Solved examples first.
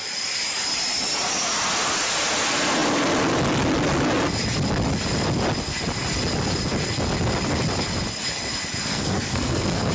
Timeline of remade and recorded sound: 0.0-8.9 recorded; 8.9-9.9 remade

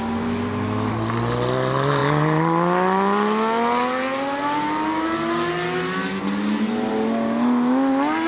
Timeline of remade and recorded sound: 0.0-8.3 recorded